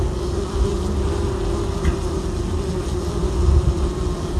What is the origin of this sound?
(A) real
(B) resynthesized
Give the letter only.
A